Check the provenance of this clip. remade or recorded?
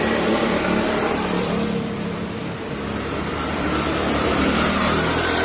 remade